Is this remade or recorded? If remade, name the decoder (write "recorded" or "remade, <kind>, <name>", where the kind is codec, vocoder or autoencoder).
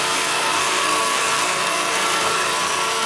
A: remade, codec, SNAC